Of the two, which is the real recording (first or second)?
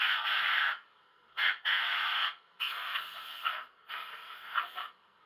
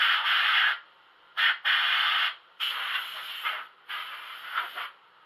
second